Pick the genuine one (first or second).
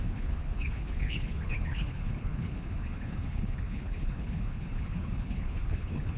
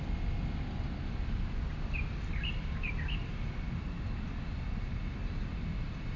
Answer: second